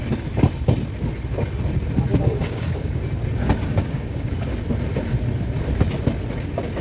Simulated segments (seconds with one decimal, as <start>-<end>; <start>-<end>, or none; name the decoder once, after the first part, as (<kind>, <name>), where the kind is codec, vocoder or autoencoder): 2.1-3.0 (codec, DAC); 3.7-4.5